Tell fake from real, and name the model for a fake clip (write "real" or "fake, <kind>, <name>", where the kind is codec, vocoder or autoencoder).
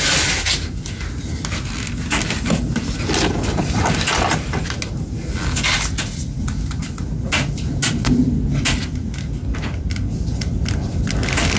real